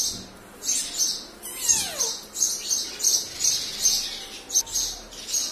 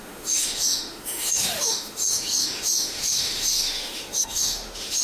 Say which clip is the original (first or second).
first